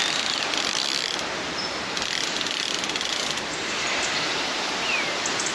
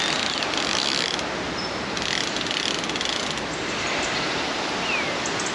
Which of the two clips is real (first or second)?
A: second